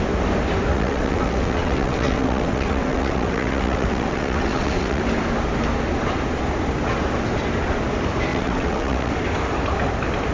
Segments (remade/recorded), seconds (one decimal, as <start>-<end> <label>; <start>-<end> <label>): 0.0-0.7 recorded; 0.7-5.0 remade; 5.0-8.3 recorded; 8.3-9.1 remade; 9.1-10.3 recorded